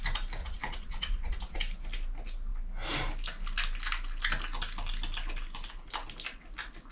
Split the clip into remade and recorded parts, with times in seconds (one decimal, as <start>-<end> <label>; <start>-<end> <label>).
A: 0.0-0.4 recorded; 0.4-1.6 remade; 1.6-6.9 recorded